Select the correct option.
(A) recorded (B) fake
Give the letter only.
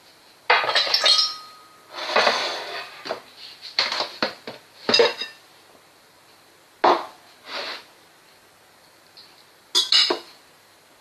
A